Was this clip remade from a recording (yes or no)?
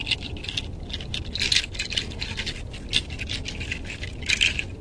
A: no